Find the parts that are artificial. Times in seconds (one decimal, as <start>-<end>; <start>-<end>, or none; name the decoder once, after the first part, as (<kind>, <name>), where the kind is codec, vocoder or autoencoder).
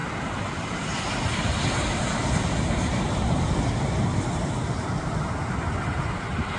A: 0.9-6.6 (vocoder, BigVGAN v2)